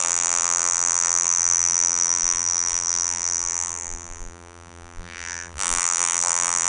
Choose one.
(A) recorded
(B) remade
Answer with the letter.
B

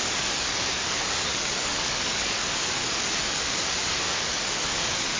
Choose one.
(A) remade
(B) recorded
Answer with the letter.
A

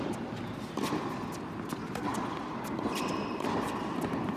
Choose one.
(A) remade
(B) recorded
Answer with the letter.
B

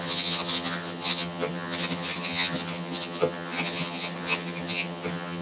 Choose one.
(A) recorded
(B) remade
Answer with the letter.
B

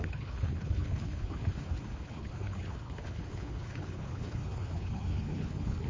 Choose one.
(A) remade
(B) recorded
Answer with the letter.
A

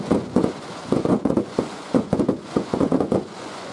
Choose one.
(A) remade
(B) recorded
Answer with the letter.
A